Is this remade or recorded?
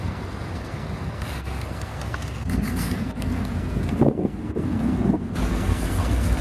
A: remade